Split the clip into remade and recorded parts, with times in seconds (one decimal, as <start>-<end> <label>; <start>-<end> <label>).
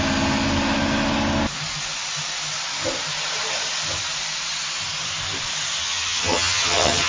0.0-5.8 recorded; 5.8-7.1 remade